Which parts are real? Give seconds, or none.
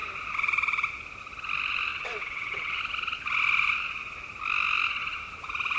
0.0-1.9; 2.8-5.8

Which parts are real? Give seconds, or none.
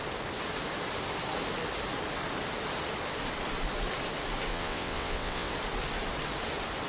0.0-4.5; 5.5-6.9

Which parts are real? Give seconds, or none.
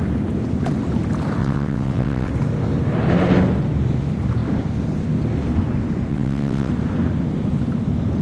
0.0-1.4; 2.3-6.1; 6.7-8.2